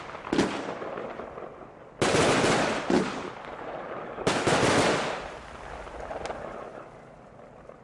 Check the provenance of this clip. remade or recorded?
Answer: recorded